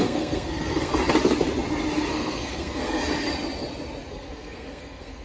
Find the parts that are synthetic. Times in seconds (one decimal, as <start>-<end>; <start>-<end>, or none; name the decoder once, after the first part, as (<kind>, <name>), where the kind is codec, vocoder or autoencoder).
0.0-0.9 (codec, SNAC); 2.1-3.0; 4.1-5.2